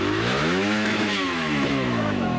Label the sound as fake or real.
fake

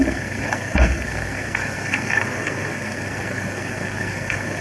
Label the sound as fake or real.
fake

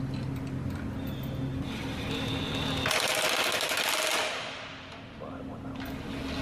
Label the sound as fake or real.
real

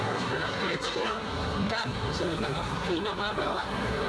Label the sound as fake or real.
fake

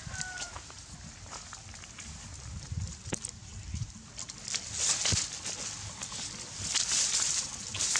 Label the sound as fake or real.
real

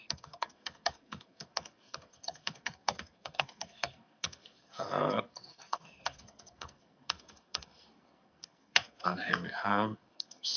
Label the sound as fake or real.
fake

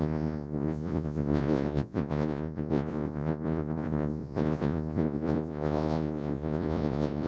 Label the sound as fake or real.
fake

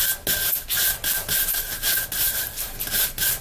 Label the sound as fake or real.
real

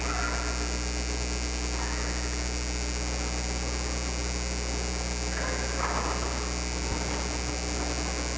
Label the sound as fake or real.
real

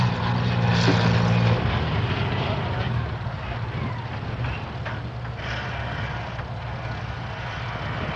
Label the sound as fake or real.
real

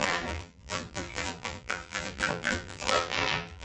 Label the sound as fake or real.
fake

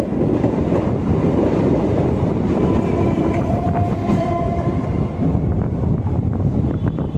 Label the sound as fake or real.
fake